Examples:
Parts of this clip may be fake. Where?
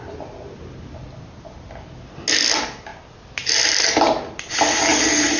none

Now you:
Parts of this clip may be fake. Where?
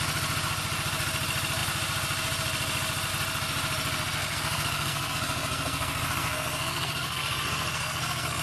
4.2-8.4 (codec, SNAC)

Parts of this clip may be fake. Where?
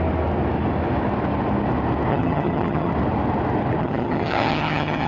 2.1-2.9 (vocoder, HiFi-GAN); 3.8-5.1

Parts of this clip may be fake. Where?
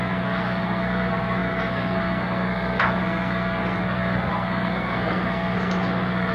0.0-6.3 (codec, SNAC)